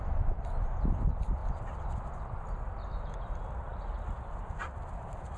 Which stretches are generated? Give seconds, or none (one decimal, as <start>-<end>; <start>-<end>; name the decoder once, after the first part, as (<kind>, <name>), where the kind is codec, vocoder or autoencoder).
none